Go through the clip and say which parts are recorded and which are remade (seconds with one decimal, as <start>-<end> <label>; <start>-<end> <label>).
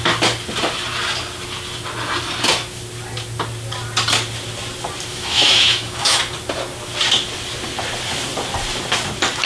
0.0-5.1 recorded; 5.1-6.2 remade; 6.2-9.5 recorded